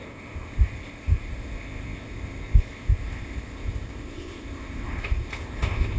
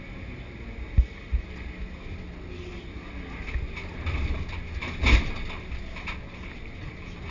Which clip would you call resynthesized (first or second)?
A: first